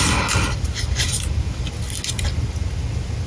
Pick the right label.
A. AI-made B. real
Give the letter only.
B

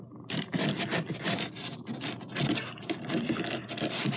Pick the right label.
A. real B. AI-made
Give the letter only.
A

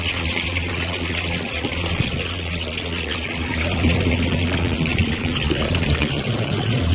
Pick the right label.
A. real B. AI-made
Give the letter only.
B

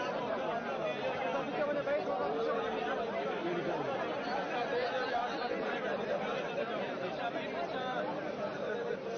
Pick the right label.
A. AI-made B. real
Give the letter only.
B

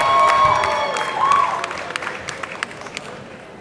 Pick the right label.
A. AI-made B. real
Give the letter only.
B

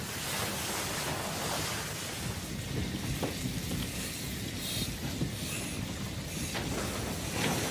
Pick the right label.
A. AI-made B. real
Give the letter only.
B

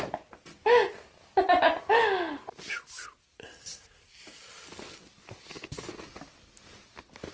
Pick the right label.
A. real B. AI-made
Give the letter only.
A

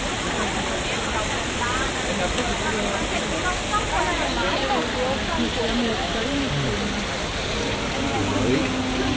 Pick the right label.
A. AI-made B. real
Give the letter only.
B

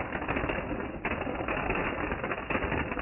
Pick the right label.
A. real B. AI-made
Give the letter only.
A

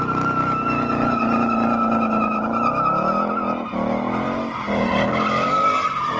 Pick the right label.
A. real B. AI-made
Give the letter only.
A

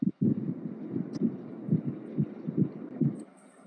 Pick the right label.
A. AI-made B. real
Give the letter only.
B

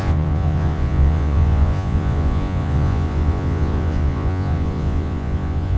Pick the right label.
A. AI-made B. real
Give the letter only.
A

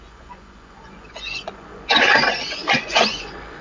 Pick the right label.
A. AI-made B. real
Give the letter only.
A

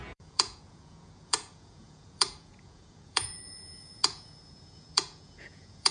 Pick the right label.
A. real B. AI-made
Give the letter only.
B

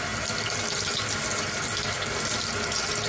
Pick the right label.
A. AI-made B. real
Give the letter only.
B